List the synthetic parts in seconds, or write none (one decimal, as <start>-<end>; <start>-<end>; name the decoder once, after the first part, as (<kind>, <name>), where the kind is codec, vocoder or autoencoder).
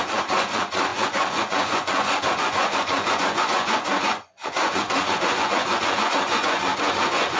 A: 0.0-7.4 (vocoder, Vocos)